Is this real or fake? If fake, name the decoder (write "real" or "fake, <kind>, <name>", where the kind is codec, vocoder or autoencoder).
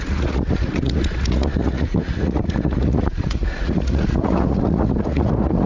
fake, vocoder, Vocos